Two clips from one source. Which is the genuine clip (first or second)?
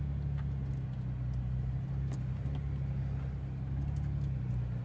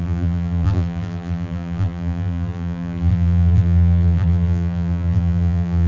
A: first